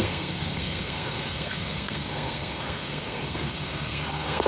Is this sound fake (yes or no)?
yes